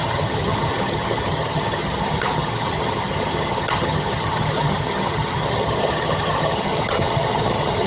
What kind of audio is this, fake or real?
fake